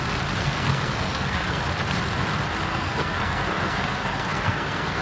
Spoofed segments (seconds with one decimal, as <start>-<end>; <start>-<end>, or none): 0.4-1.6; 2.7-5.0